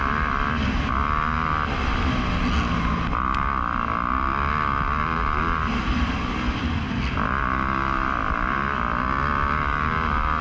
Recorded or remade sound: recorded